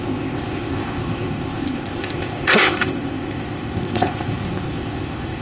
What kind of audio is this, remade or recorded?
remade